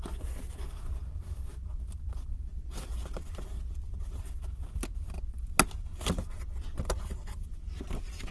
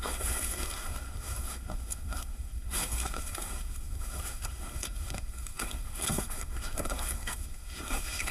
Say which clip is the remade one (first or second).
second